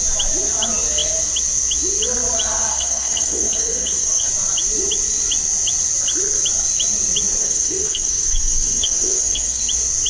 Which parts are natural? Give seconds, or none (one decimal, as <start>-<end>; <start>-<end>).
0.0-2.7; 4.3-7.4; 9.6-10.1